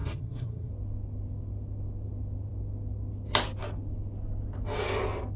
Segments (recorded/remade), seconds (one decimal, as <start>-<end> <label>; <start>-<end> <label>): 0.0-0.7 remade; 0.7-5.4 recorded

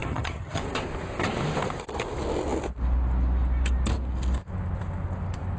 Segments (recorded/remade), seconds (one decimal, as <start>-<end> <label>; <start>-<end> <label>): 0.0-0.6 remade; 0.6-5.6 recorded

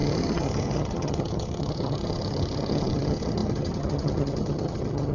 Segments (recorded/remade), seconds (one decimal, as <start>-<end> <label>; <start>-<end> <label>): 0.0-5.1 remade